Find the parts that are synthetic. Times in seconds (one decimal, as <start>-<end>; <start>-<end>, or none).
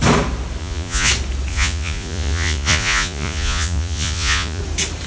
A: 0.6-1.1; 1.5-4.6